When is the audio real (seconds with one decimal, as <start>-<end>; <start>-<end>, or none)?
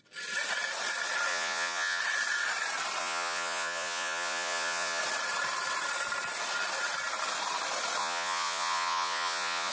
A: 0.0-1.3; 2.0-3.0; 5.0-8.0